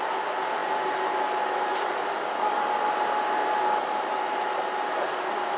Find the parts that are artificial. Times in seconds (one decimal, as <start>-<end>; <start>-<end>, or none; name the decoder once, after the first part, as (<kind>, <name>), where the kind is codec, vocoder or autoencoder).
0.6-2.2 (vocoder, BigVGAN v2)